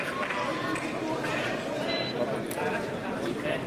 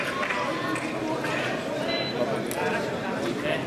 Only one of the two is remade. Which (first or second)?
first